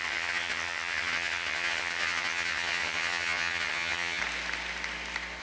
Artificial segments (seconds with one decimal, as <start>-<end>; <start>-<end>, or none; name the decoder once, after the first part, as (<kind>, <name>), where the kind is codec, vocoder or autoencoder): 0.0-4.2 (vocoder, HiFi-GAN)